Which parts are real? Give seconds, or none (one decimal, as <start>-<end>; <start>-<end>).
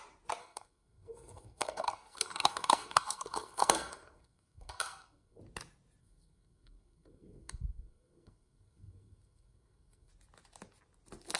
0.0-0.4; 5.4-6.0; 10.1-11.4